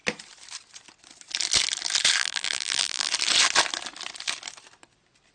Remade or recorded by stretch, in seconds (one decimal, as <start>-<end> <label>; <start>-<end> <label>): 0.0-2.2 recorded; 2.2-3.1 remade; 3.1-5.3 recorded